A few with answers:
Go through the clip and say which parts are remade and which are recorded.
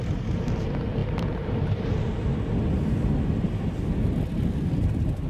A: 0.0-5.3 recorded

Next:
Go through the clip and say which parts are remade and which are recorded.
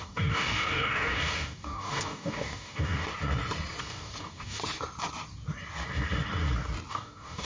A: 0.0-3.1 remade; 3.1-3.8 recorded; 3.8-4.6 remade; 4.6-6.9 recorded; 6.9-7.4 remade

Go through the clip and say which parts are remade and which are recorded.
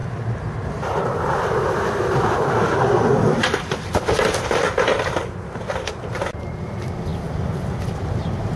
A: 0.0-8.6 remade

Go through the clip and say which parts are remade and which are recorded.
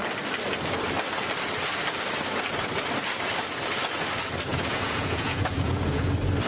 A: 0.0-4.5 recorded; 4.5-6.1 remade; 6.1-6.5 recorded